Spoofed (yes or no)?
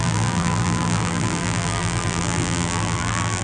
yes